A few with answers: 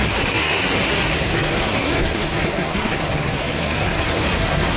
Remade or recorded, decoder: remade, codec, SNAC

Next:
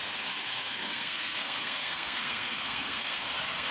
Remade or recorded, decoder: remade, codec, SNAC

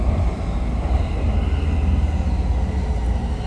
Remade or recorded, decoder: recorded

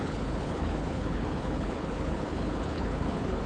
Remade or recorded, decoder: remade, codec, HILCodec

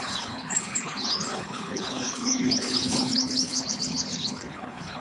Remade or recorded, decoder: remade, codec, HILCodec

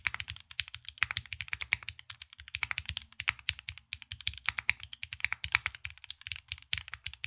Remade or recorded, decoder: recorded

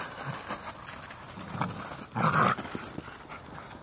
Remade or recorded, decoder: recorded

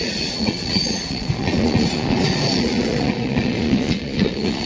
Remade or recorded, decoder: remade, vocoder, Vocos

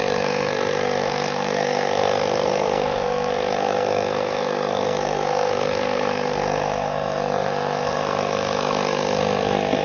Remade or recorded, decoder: remade, codec, SNAC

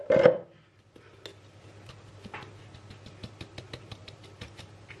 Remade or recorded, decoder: recorded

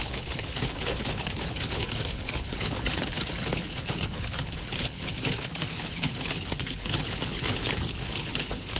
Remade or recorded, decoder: remade, codec, HILCodec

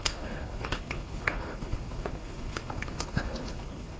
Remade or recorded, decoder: remade, codec, HILCodec